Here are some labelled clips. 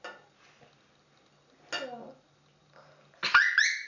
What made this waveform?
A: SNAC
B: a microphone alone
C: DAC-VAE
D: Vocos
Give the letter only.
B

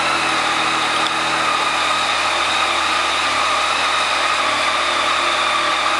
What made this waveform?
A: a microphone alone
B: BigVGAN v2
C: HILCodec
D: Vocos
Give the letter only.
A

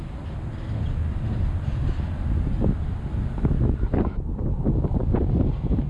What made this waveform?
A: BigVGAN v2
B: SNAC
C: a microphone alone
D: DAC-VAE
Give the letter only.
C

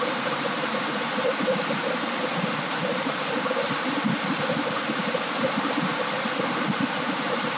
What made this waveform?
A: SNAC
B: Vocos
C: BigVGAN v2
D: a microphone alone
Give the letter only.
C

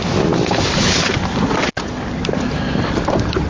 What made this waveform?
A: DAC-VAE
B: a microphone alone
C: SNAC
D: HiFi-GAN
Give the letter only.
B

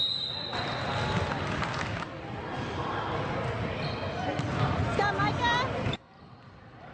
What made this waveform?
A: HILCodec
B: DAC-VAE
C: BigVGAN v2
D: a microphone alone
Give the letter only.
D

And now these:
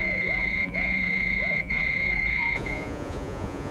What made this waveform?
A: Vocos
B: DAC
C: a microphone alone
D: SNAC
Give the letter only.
A